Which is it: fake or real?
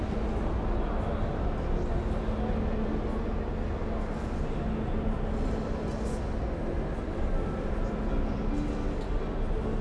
real